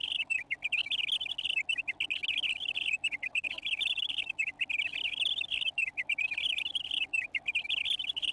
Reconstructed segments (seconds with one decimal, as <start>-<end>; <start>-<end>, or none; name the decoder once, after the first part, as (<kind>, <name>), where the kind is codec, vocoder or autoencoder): 0.0-0.8 (vocoder, BigVGAN v2); 2.9-8.3